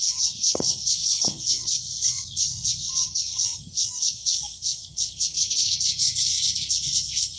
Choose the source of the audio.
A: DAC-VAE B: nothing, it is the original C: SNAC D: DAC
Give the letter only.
C